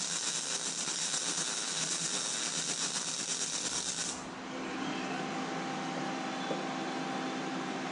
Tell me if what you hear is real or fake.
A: real